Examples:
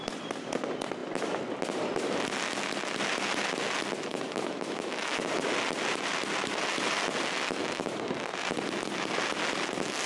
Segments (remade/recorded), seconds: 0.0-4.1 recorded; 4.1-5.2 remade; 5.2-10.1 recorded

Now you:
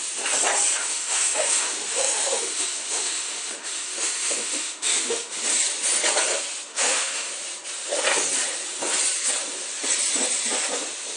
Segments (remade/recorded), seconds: 0.0-0.8 recorded; 0.8-5.4 remade; 5.4-6.7 recorded; 6.7-7.3 remade; 7.3-11.2 recorded

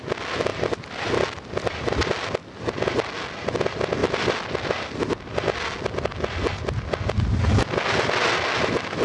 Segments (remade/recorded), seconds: 0.0-9.0 recorded